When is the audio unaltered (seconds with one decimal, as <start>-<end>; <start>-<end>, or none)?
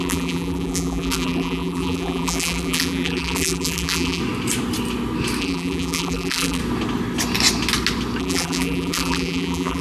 4.2-5.4; 6.6-8.2